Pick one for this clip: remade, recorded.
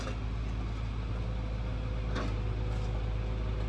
recorded